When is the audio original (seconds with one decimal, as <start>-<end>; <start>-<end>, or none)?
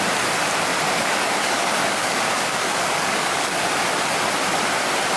0.0-0.7; 3.8-5.2